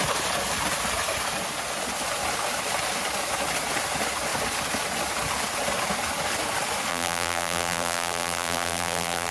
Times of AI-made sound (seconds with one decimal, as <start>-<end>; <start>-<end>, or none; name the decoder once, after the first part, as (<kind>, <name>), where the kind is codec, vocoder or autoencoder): 6.9-9.3 (vocoder, BigVGAN v2)